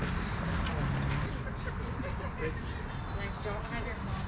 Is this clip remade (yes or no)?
no